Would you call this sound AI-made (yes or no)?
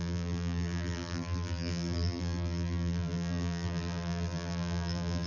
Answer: yes